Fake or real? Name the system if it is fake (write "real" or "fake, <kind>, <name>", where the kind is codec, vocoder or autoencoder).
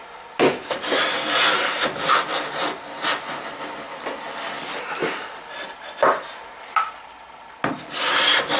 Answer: real